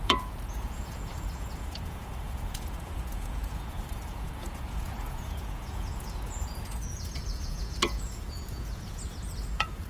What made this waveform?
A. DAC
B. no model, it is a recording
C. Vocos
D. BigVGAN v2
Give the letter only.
C